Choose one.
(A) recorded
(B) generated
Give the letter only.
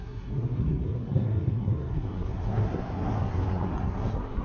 B